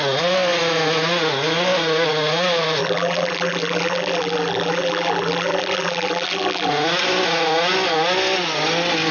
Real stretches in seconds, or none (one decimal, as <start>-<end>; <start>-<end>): 0.0-2.8; 6.7-9.1